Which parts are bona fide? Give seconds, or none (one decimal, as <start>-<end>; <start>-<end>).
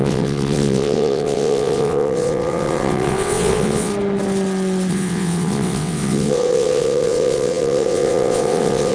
3.9-4.9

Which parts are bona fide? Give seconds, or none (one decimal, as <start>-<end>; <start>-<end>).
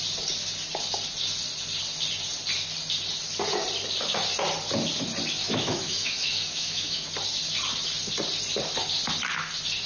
0.0-5.4; 7.1-9.9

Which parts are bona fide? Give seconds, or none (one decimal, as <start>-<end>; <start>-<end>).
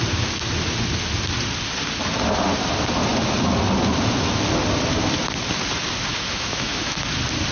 0.0-6.1; 7.0-7.5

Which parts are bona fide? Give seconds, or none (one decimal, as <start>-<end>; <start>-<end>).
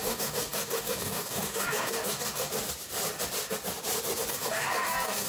2.5-4.3